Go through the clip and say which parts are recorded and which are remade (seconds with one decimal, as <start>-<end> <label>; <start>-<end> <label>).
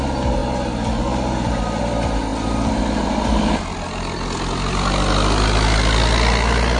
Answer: 0.0-6.8 recorded